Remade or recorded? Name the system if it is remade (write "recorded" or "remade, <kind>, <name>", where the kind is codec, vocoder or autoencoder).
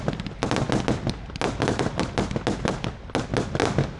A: recorded